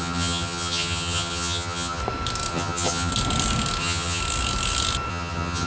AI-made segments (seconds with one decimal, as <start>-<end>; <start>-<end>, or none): 0.0-2.0; 2.5-3.1; 3.8-4.2; 5.1-5.7